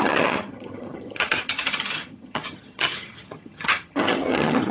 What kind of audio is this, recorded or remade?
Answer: remade